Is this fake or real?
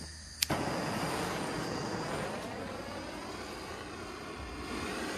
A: real